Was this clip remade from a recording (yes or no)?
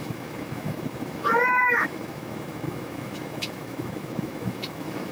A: yes